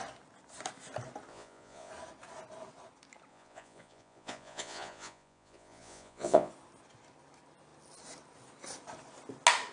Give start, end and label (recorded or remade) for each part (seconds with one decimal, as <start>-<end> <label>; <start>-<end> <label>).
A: 0.0-1.3 recorded; 1.3-1.9 remade; 1.9-3.3 recorded; 3.3-6.5 remade; 6.5-9.7 recorded